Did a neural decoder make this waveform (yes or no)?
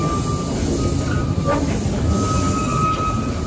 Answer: no